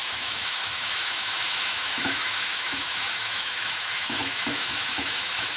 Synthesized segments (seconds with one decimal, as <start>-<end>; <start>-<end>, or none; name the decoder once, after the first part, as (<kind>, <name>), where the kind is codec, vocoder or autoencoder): 0.0-5.6 (autoencoder, DAC-VAE)